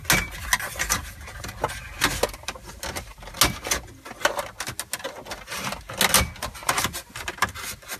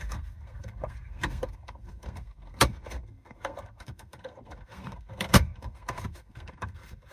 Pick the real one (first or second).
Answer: first